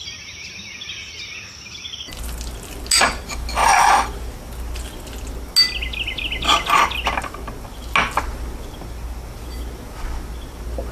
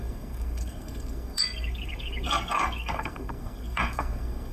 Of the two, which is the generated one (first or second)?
second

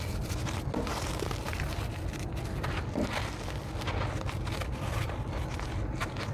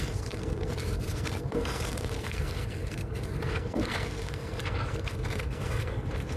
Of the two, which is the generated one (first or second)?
second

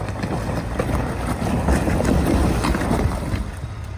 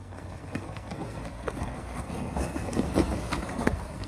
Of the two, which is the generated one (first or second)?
second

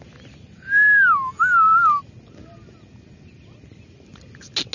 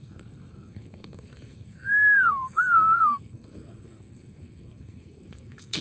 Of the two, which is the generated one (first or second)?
second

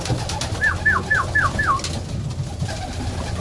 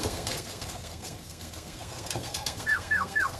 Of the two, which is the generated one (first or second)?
second